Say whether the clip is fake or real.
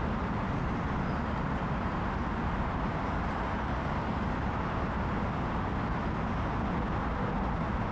real